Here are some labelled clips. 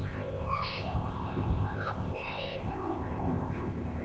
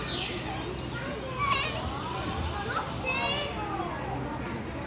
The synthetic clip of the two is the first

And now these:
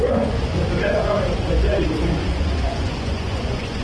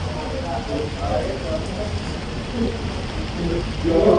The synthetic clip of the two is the first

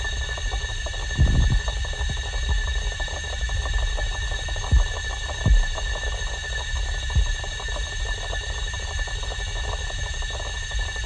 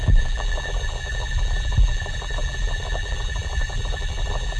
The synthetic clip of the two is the second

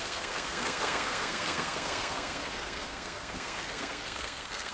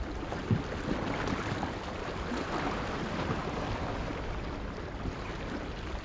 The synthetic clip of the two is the first